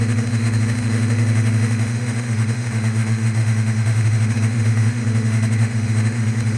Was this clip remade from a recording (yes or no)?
yes